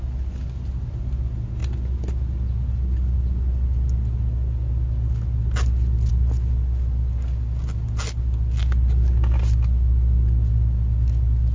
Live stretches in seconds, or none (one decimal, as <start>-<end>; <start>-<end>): 0.0-11.5